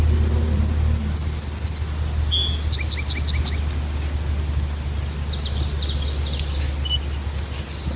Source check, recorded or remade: recorded